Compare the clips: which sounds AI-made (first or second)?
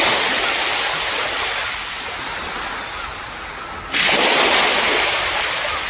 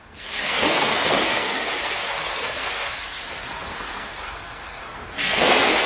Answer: second